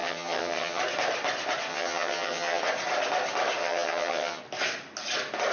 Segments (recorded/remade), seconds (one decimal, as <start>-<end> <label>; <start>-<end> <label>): 0.0-0.8 remade; 0.8-1.7 recorded; 1.7-2.6 remade; 2.6-3.6 recorded; 3.6-4.4 remade; 4.4-5.5 recorded